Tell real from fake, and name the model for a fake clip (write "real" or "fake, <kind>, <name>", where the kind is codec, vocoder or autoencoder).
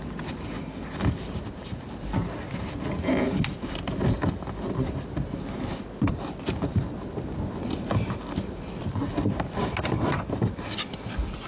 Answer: real